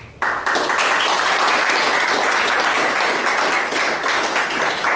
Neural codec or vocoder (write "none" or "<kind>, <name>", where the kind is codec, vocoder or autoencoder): none